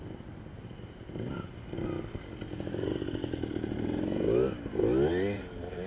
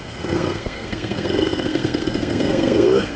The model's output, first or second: second